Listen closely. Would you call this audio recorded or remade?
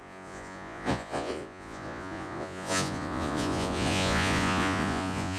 remade